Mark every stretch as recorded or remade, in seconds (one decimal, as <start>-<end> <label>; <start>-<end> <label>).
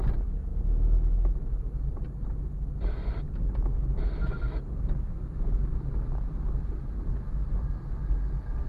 0.0-7.1 recorded; 7.1-7.8 remade; 7.8-8.7 recorded